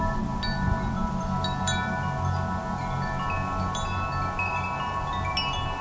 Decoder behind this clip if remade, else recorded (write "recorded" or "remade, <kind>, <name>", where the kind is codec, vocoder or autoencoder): recorded